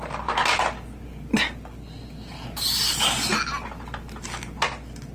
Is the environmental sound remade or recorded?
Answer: recorded